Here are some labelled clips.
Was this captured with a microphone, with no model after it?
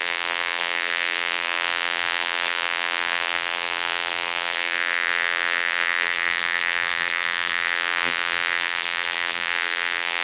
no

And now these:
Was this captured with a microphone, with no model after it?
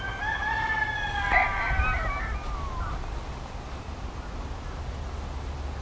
yes